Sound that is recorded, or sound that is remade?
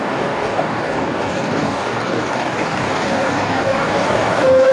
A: remade